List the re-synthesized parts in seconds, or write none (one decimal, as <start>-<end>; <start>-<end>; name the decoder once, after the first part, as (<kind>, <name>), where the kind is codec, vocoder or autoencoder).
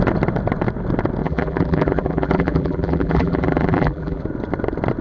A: 1.2-4.2 (vocoder, BigVGAN v2)